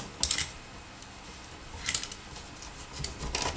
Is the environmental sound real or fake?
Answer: real